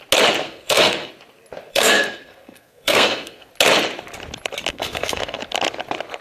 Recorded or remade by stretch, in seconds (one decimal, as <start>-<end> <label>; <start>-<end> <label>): 0.0-0.4 recorded; 0.4-1.1 remade; 1.1-1.7 recorded; 1.7-3.5 remade; 3.5-4.7 recorded; 4.7-5.4 remade; 5.4-6.2 recorded